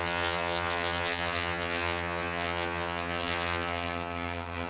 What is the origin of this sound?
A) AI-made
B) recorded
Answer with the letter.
A